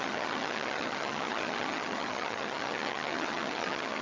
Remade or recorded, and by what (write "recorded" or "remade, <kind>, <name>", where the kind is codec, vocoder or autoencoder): remade, vocoder, HiFi-GAN